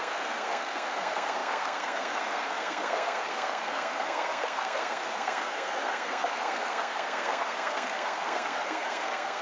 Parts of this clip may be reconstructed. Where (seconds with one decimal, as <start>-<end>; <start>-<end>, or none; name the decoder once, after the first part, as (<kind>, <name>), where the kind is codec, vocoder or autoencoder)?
0.0-9.4 (codec, SNAC)